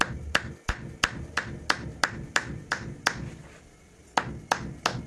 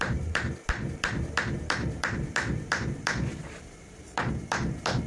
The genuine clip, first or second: first